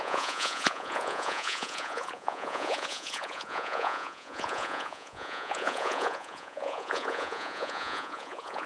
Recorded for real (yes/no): no